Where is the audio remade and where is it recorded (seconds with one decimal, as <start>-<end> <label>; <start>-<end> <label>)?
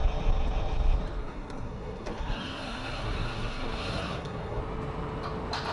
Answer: 0.0-1.2 recorded; 1.2-4.6 remade; 4.6-5.7 recorded